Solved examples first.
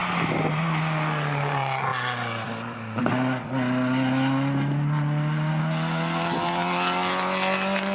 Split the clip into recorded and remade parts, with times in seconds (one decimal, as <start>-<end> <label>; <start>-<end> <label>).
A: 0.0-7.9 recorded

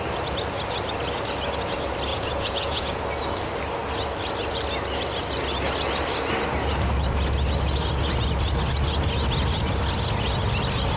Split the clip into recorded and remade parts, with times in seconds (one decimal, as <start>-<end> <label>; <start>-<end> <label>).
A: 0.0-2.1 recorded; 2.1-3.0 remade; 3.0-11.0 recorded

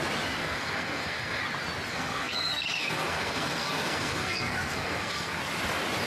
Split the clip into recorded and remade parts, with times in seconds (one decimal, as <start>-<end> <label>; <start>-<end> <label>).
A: 0.0-0.4 recorded; 0.4-1.4 remade; 1.4-1.9 recorded; 1.9-5.4 remade; 5.4-6.1 recorded

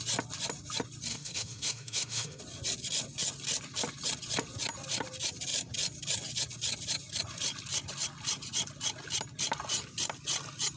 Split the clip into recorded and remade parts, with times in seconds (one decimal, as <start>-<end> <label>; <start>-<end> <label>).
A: 0.0-1.1 recorded; 1.1-2.4 remade; 2.4-10.8 recorded

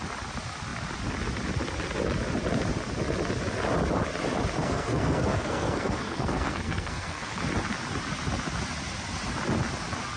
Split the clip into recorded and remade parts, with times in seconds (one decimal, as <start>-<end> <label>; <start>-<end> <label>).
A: 0.0-4.6 recorded; 4.6-7.4 remade; 7.4-10.2 recorded

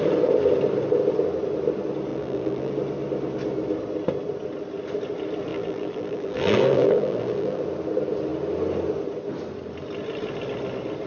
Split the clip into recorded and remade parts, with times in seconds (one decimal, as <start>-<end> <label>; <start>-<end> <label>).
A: 0.0-2.1 recorded; 2.1-2.7 remade; 2.7-5.5 recorded; 5.5-7.6 remade; 7.6-11.1 recorded

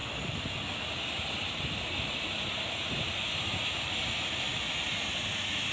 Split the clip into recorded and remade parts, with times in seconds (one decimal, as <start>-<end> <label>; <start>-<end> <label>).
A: 0.0-5.7 recorded